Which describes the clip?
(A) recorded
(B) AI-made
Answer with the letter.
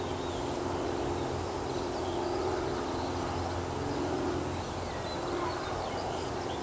A